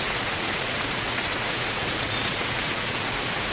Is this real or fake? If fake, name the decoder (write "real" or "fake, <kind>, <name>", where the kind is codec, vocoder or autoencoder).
fake, vocoder, Vocos